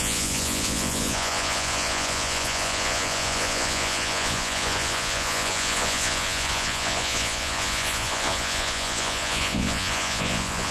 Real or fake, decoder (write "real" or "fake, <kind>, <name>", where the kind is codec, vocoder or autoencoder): fake, vocoder, Vocos